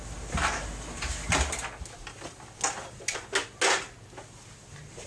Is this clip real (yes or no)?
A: yes